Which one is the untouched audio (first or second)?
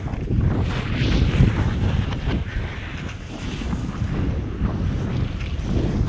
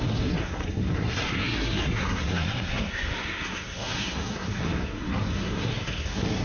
first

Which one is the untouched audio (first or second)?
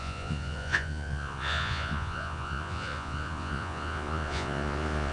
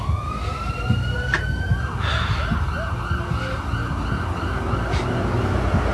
second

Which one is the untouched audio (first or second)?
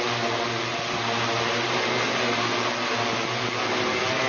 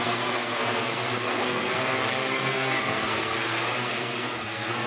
first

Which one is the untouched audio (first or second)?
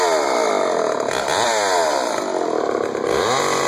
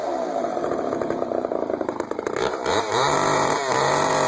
first